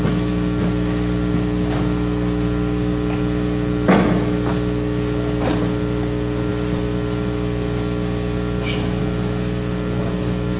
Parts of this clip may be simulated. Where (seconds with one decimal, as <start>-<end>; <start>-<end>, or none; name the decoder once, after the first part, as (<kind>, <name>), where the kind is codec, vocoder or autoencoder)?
none